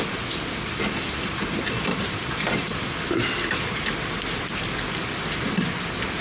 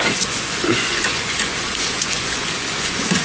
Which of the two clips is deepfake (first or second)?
second